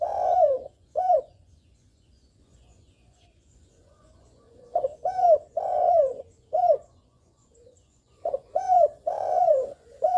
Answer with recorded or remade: remade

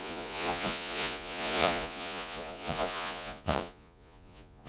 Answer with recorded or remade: remade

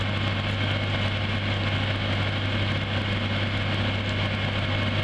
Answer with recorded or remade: recorded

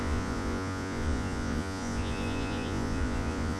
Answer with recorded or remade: remade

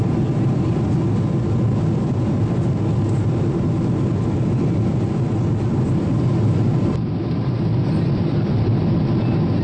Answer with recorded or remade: recorded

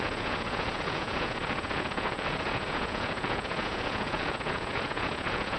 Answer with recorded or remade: remade